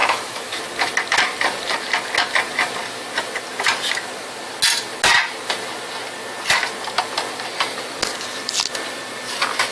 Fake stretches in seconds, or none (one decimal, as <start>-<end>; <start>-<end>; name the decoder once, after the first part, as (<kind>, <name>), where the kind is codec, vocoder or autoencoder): 0.0-0.6 (autoencoder, DAC-VAE)